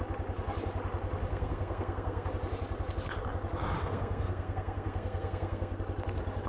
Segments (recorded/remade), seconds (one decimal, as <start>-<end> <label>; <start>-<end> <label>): 0.0-1.3 recorded; 1.3-2.3 remade; 2.3-3.8 recorded; 3.8-5.8 remade; 5.8-6.5 recorded